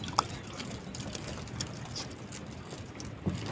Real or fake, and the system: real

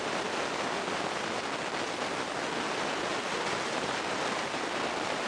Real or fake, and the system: real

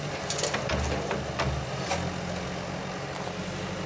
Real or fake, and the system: real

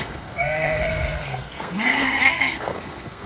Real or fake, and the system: fake, codec, SNAC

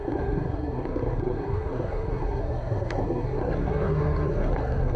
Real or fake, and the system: fake, codec, SNAC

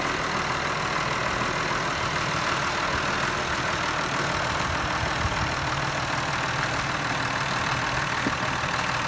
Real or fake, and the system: real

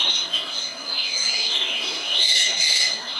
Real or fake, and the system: fake, codec, SNAC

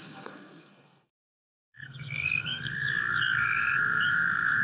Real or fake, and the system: fake, codec, SNAC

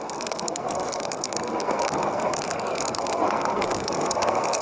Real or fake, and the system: fake, codec, SNAC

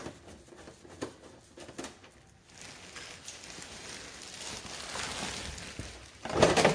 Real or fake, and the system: real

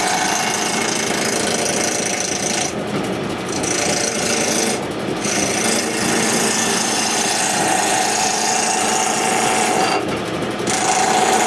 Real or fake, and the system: real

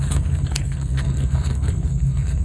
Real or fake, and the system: fake, codec, SNAC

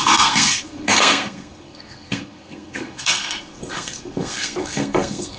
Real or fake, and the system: fake, codec, SNAC